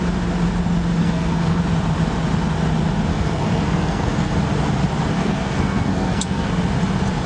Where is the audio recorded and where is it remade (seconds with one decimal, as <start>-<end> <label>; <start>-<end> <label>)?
0.0-1.0 recorded; 1.0-1.6 remade; 1.6-3.1 recorded; 3.1-4.3 remade; 4.3-5.2 recorded; 5.2-6.5 remade; 6.5-7.3 recorded